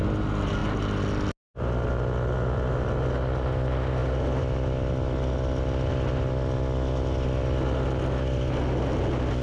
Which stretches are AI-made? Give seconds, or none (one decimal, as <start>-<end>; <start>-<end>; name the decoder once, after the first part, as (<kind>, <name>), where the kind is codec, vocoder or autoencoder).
none

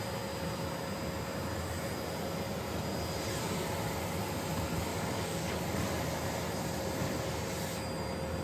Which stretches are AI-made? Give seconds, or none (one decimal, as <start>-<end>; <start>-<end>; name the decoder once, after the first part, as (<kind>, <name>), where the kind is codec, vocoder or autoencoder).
4.9-5.6 (codec, DAC)

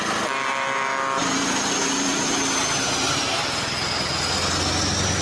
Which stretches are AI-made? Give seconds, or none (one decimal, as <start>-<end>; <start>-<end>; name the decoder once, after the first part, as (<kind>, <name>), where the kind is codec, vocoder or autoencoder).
1.2-1.7 (vocoder, BigVGAN v2)